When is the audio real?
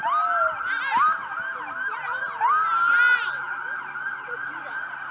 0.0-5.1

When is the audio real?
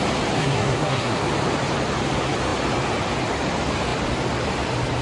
0.0-0.4; 1.3-5.0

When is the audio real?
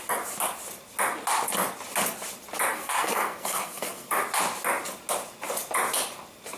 0.0-2.7; 4.1-6.6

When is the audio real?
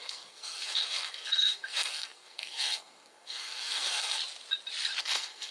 4.2-5.0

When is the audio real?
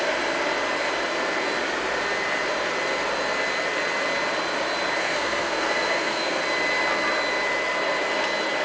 0.0-5.0; 6.4-8.6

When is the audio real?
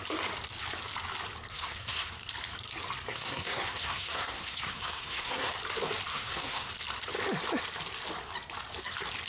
0.0-1.5; 2.1-3.1; 5.5-6.1; 6.7-9.3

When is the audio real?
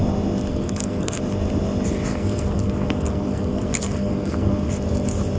0.0-0.5; 1.2-2.1; 4.7-5.4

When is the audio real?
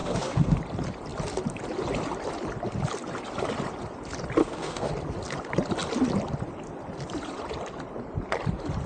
0.6-4.4; 4.9-8.9